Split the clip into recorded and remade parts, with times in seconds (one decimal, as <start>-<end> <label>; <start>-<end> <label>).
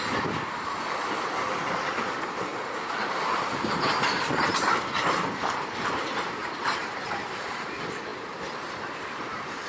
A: 0.0-2.5 remade; 2.5-5.3 recorded; 5.3-8.1 remade; 8.1-9.0 recorded; 9.0-9.7 remade